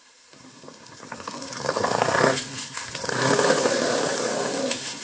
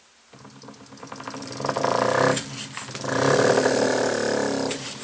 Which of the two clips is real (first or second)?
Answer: second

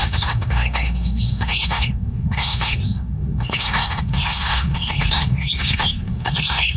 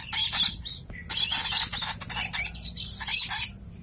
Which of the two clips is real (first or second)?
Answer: second